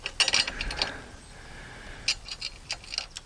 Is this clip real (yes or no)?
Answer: yes